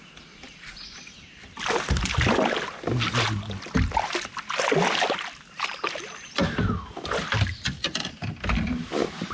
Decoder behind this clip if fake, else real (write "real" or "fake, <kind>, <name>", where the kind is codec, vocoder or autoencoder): real